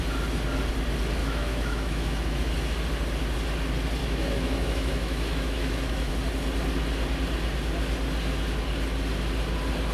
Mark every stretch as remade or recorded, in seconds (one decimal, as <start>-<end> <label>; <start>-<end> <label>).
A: 0.0-1.2 recorded; 1.2-2.5 remade; 2.5-4.0 recorded; 4.0-6.1 remade; 6.1-9.9 recorded